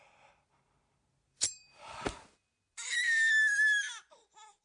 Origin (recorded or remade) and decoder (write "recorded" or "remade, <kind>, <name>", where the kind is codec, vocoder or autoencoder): recorded